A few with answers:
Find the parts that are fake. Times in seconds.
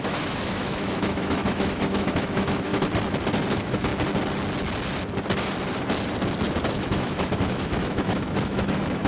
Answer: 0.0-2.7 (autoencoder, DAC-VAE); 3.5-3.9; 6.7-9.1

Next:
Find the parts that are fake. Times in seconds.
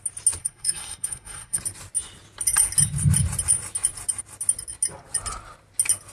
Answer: 0.4-1.6 (codec, SNAC)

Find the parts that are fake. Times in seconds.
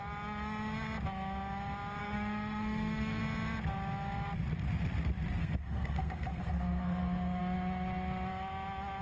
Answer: 2.0-3.2 (codec, SNAC); 5.4-7.4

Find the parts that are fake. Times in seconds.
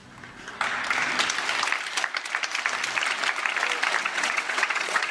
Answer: 4.0-5.1 (vocoder, WaveNeXt)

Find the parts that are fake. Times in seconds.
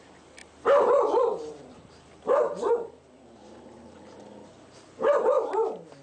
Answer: 0.0-3.4 (vocoder, BigVGAN v2); 5.2-6.0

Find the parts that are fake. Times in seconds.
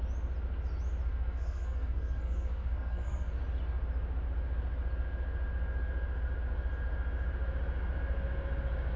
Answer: 1.1-3.4 (codec, SNAC)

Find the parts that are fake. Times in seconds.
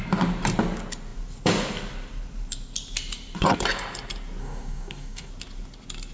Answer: 4.4-5.3 (codec, DAC)